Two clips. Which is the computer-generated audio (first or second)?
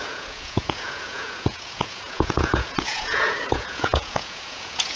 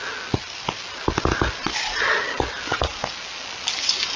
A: first